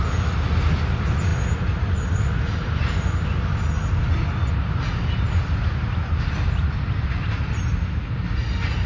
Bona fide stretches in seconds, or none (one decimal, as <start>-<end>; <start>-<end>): 0.0-8.9